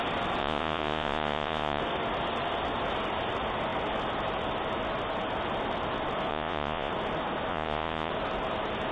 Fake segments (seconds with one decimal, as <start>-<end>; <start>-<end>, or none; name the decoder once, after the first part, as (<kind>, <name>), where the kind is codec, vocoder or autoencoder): 0.4-1.8 (vocoder, Vocos); 6.3-6.9; 7.5-8.1